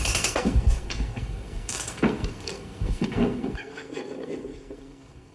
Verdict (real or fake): fake